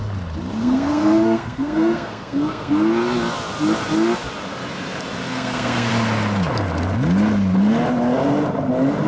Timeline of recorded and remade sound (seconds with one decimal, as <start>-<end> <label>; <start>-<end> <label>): 0.0-0.6 recorded; 0.6-2.7 remade; 2.7-5.3 recorded; 5.3-5.9 remade; 5.9-9.1 recorded